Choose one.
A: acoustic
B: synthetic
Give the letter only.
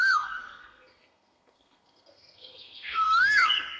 B